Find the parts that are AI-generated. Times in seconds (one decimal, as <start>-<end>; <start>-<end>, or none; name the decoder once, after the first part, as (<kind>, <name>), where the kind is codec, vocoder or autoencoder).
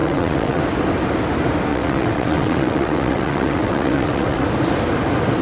0.0-0.6 (vocoder, WaveNeXt); 1.7-4.4